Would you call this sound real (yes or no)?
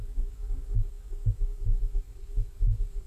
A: no